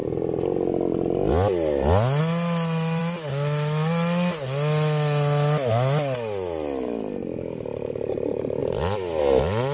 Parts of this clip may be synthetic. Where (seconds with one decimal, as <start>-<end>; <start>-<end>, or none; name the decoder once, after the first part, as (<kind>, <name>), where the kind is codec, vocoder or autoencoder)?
none